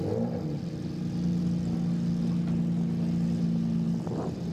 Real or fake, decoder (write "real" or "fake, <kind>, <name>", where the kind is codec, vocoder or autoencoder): real